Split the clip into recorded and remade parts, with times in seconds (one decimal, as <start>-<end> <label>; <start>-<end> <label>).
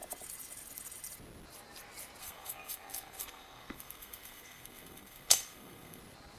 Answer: 0.0-2.2 recorded; 2.2-6.0 remade; 6.0-6.4 recorded